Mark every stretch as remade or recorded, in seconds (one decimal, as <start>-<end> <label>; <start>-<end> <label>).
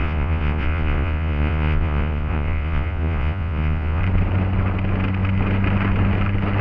0.0-4.0 remade; 4.0-6.6 recorded